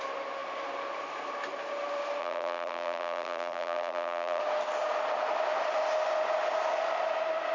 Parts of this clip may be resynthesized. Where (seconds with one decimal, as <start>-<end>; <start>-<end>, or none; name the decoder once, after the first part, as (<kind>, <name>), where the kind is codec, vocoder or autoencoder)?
2.2-4.4 (vocoder, BigVGAN v2)